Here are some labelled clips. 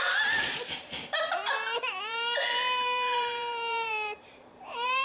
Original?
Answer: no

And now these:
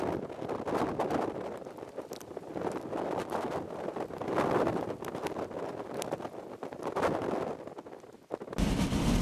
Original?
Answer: yes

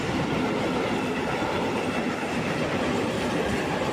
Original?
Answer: no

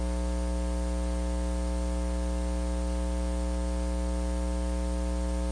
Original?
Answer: yes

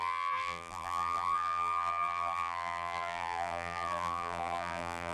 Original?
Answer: no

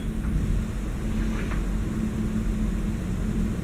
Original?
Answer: yes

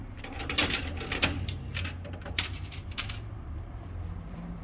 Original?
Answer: no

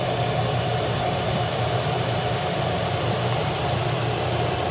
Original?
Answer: no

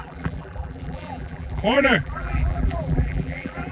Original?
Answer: no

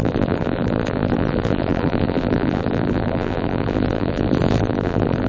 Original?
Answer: no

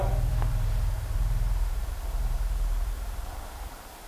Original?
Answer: no